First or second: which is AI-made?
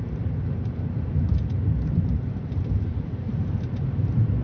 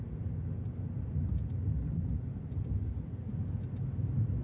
first